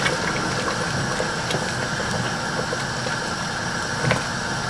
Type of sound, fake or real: real